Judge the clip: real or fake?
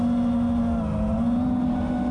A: real